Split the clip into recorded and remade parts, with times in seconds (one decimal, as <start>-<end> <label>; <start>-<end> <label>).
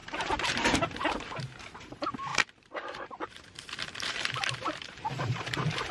0.0-5.9 remade